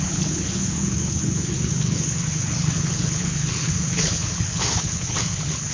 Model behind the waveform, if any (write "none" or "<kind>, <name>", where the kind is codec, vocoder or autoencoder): codec, HILCodec